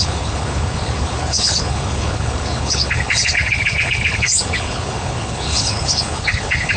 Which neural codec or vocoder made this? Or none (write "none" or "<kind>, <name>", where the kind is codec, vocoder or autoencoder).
codec, HILCodec